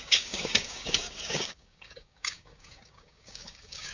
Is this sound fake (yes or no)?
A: yes